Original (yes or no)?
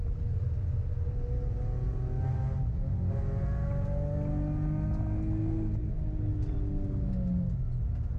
yes